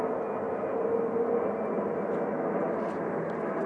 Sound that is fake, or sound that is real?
real